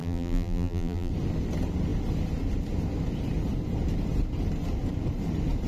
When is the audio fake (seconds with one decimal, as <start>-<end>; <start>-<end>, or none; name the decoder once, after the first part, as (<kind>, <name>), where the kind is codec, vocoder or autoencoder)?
0.0-1.1 (vocoder, BigVGAN v2)